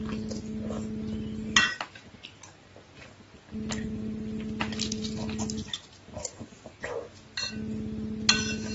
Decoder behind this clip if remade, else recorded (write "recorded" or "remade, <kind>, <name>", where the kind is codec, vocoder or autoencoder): recorded